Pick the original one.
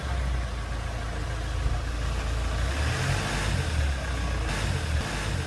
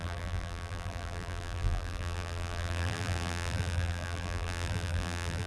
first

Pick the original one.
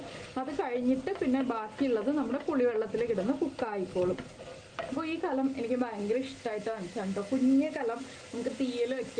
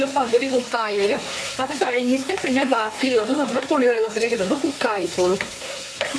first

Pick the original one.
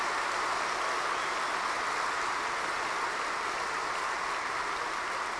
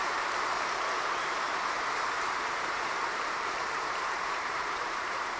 first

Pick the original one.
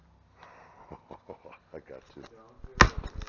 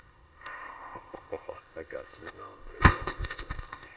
first